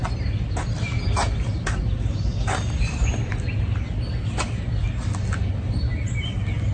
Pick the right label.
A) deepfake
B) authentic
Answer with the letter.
B